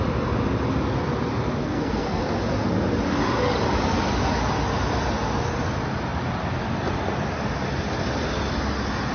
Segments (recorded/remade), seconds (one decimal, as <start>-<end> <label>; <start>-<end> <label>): 0.0-1.6 recorded; 1.6-2.2 remade; 2.2-9.1 recorded